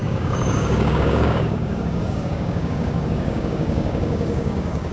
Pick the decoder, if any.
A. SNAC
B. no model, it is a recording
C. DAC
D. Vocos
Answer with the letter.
C